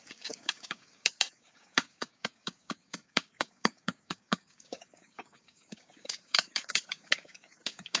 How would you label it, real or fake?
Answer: fake